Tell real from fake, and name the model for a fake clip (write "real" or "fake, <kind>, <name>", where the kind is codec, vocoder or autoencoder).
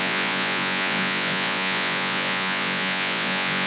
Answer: fake, vocoder, Vocos